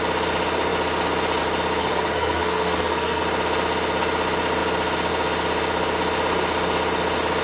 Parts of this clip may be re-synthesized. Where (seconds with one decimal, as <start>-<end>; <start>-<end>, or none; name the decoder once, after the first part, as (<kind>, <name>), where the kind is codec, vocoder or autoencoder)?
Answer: 1.8-3.2 (codec, SNAC)